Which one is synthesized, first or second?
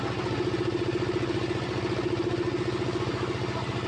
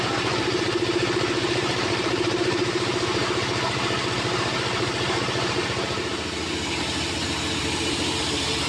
second